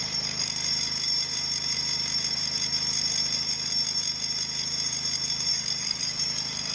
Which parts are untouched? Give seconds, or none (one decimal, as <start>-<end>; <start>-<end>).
0.0-5.5; 6.0-6.7